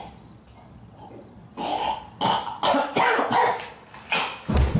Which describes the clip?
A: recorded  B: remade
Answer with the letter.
A